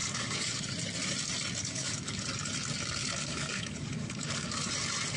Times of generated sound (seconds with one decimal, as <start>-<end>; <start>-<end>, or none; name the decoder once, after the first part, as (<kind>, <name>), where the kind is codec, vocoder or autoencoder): 0.0-0.6 (codec, DAC); 1.6-2.2; 3.0-4.7